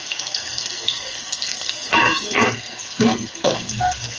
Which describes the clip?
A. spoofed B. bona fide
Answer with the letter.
A